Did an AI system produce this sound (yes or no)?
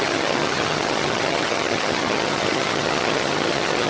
yes